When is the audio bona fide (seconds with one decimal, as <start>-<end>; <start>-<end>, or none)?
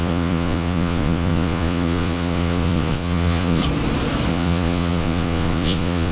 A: 3.6-4.3